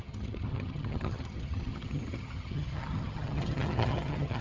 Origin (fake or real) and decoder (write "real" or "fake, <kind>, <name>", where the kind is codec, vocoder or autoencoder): fake, vocoder, HiFi-GAN